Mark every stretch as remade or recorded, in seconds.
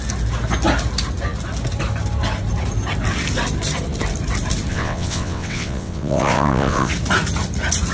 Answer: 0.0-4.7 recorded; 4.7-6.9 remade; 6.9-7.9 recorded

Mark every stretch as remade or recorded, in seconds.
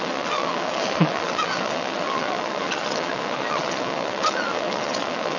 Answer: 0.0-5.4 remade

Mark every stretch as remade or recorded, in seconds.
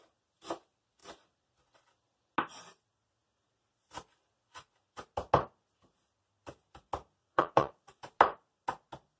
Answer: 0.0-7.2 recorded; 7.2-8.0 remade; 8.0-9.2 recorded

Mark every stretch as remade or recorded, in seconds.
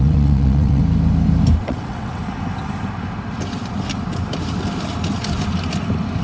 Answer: 0.0-0.8 remade; 0.8-1.6 recorded; 1.6-2.2 remade; 2.2-6.2 recorded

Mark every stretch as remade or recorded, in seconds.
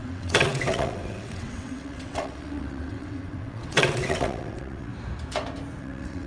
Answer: 0.0-4.9 remade; 4.9-5.8 recorded; 5.8-6.3 remade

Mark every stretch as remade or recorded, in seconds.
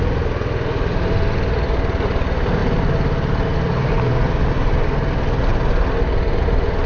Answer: 0.0-6.9 recorded